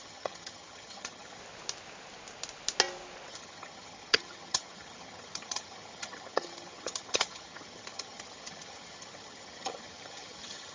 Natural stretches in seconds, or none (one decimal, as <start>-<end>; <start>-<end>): 1.4-3.3